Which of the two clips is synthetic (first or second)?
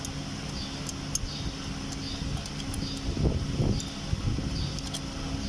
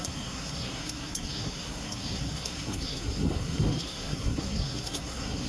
second